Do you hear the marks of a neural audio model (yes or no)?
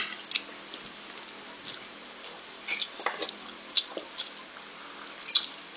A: no